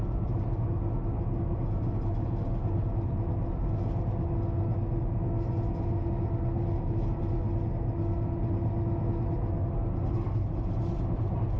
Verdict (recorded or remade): recorded